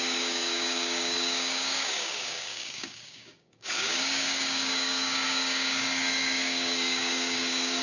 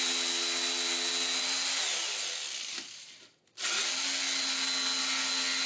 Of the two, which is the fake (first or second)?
first